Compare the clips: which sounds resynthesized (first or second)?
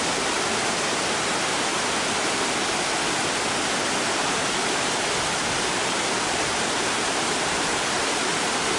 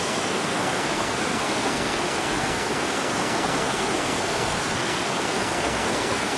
second